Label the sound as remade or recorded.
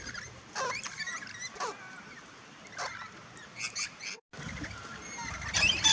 recorded